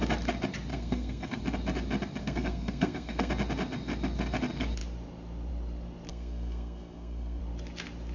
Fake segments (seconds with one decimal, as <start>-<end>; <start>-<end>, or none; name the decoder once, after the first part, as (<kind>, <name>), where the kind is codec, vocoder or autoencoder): 0.7-1.4 (codec, SNAC); 2.2-3.3; 6.1-7.4